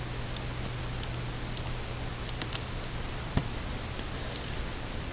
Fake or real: real